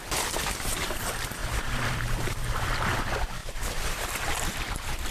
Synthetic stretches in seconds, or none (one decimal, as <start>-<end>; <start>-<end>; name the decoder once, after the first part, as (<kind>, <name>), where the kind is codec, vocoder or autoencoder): 1.4-2.7 (vocoder, BigVGAN v2); 3.4-5.1